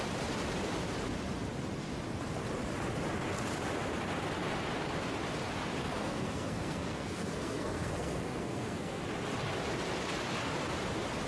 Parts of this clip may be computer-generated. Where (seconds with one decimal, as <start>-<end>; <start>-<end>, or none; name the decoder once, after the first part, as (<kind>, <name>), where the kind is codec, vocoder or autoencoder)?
5.8-9.0 (codec, SNAC)